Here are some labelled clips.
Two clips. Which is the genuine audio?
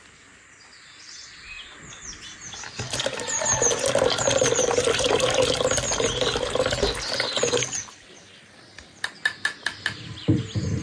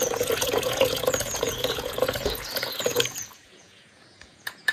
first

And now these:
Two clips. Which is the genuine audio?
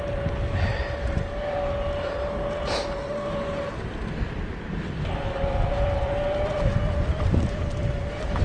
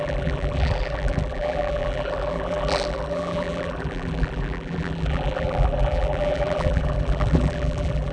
first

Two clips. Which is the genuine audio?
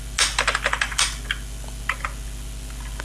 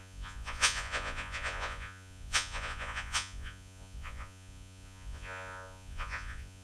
first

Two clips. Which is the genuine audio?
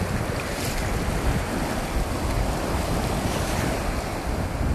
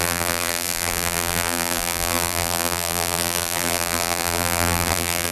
first